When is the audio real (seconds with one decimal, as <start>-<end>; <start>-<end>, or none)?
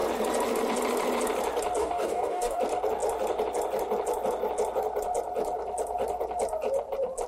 0.0-1.8; 2.6-7.3